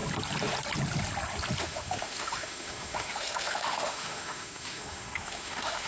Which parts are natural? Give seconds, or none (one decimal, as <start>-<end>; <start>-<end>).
0.0-1.6